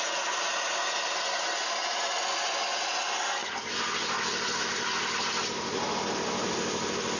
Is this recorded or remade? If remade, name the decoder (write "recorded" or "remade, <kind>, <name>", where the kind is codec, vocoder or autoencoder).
recorded